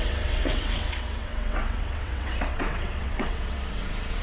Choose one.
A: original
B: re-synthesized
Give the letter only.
B